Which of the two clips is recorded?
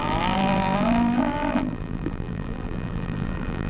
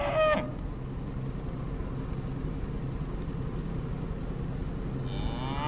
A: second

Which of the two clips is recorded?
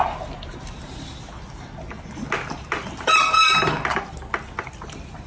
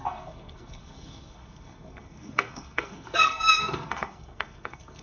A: first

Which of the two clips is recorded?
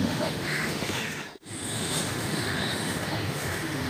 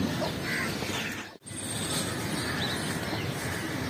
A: second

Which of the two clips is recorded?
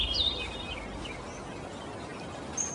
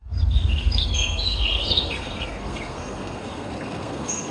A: first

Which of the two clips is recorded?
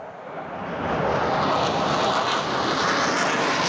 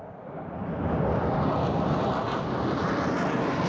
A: first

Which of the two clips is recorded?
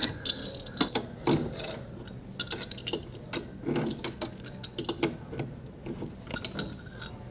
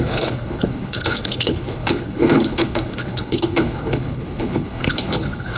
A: first